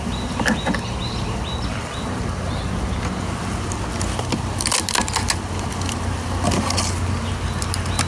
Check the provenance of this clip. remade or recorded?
recorded